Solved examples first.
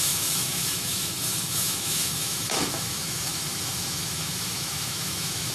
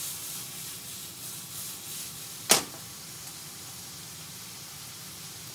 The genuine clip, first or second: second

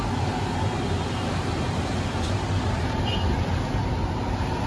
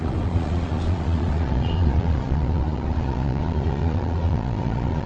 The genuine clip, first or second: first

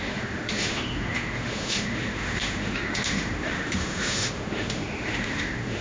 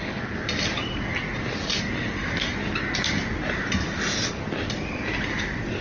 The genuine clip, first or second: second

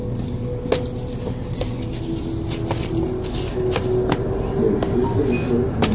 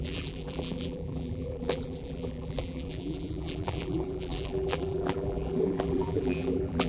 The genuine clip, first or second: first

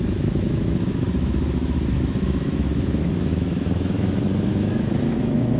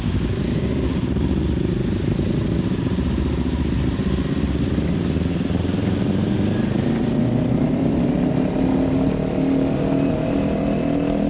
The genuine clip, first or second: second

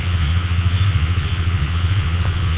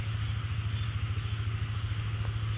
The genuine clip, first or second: second